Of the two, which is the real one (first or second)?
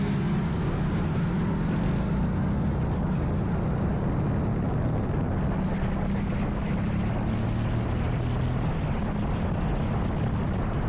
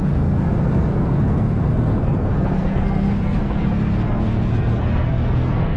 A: first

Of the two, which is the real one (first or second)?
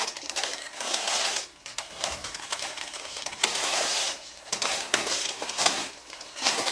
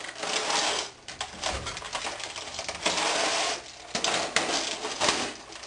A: second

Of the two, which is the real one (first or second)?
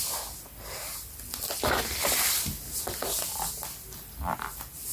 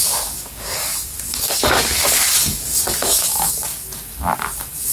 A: first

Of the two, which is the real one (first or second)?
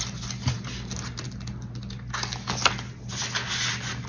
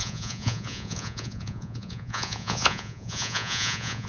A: first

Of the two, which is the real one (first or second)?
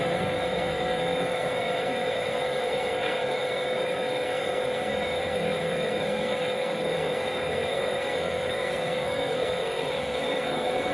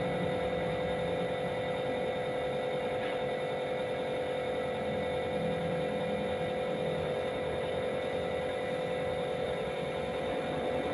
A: second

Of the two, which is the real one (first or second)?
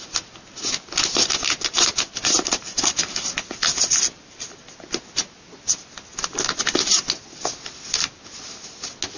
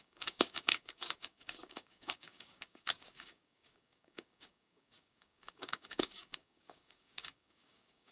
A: first